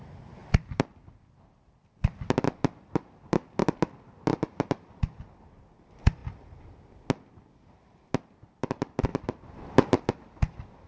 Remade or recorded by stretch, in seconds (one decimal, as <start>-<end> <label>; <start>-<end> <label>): 0.0-10.9 recorded